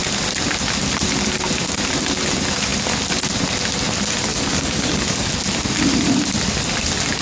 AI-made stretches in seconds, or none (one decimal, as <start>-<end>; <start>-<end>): 4.3-5.3